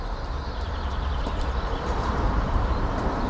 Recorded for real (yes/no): no